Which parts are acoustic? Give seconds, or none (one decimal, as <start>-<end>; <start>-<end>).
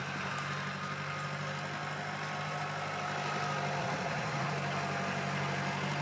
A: 0.0-3.8; 4.5-6.0